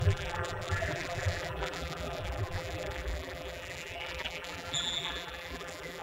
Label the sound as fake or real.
fake